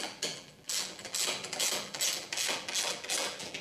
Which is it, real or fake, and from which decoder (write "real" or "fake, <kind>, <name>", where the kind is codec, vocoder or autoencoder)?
fake, vocoder, BigVGAN v2